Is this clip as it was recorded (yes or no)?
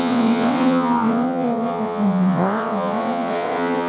no